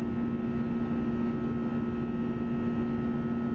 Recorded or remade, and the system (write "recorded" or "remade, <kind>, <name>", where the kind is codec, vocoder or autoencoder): recorded